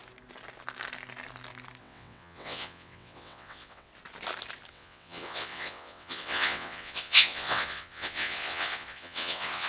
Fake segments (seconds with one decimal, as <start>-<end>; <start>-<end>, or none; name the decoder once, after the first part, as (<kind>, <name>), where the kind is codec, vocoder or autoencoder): 1.8-3.9 (vocoder, WaveNeXt); 4.7-9.7